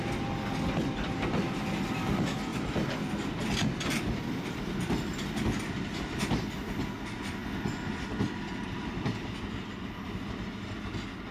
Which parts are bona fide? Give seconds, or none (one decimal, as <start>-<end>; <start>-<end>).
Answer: 0.0-11.3